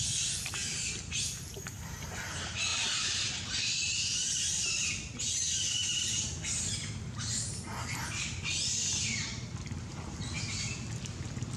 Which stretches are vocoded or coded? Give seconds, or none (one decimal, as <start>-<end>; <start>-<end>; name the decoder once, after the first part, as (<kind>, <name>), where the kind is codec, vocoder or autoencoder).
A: none